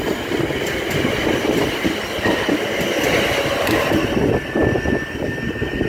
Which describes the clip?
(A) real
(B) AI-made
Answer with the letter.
A